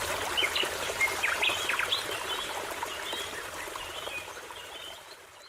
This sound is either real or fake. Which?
fake